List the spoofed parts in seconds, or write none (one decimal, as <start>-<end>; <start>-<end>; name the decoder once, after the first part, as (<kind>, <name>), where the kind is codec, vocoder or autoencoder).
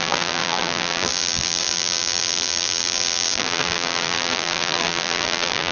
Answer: 0.0-5.7 (vocoder, BigVGAN v2)